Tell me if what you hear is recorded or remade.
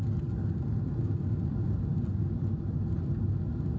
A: recorded